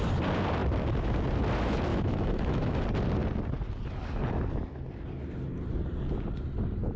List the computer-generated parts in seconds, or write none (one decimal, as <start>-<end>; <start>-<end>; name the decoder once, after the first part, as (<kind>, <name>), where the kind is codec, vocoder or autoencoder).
1.9-2.8 (autoencoder, DAC-VAE)